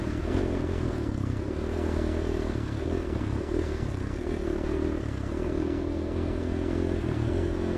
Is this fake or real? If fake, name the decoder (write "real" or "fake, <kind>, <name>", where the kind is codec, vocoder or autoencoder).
fake, codec, SNAC